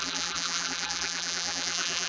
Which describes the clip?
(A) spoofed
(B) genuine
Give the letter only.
A